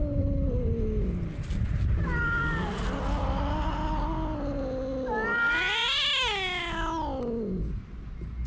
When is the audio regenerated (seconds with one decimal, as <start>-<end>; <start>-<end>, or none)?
none